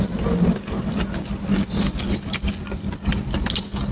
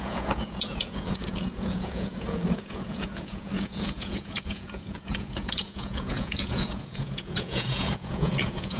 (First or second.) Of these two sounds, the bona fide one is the first